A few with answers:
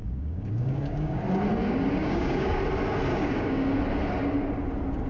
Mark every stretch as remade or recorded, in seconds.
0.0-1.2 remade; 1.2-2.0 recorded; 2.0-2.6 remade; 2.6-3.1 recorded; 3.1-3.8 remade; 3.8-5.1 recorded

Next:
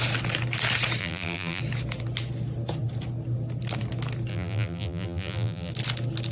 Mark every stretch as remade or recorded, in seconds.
0.0-1.0 recorded; 1.0-1.6 remade; 1.6-4.3 recorded; 4.3-5.7 remade; 5.7-6.3 recorded

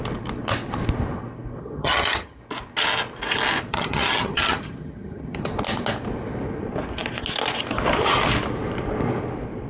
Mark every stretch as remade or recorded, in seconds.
0.0-1.6 recorded; 1.6-2.4 remade; 2.4-3.7 recorded; 3.7-5.5 remade; 5.5-9.7 recorded

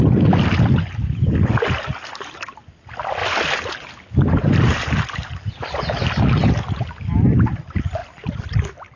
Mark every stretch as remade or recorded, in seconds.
0.0-9.0 recorded

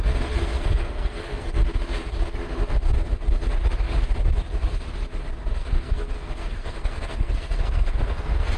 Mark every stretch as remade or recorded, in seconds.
0.0-1.6 remade; 1.6-5.5 recorded; 5.5-8.6 remade